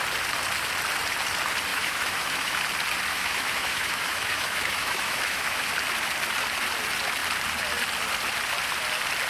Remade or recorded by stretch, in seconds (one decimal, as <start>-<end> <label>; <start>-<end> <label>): 0.0-1.7 recorded; 1.7-2.6 remade; 2.6-3.1 recorded; 3.1-5.7 remade; 5.7-9.3 recorded